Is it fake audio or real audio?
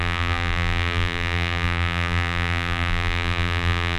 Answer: fake